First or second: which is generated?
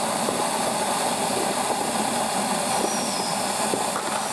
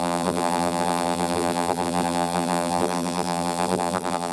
second